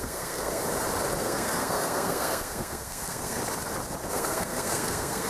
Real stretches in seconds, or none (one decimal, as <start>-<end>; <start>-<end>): 0.6-1.2; 3.4-4.1